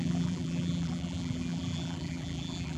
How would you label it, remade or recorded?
remade